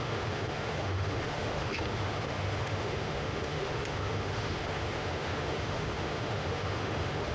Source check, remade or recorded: remade